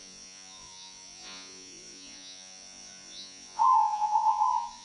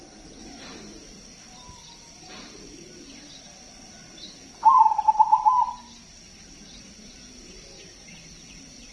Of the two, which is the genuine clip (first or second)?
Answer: second